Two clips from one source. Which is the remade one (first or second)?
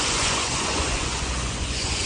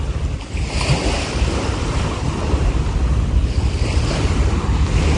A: first